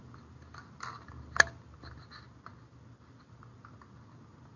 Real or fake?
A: real